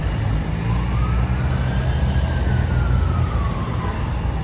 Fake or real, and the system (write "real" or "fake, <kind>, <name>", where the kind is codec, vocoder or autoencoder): real